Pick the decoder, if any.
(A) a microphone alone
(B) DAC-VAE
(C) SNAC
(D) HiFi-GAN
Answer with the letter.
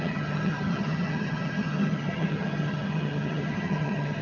D